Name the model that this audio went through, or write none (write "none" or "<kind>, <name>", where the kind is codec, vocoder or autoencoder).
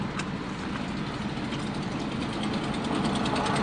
none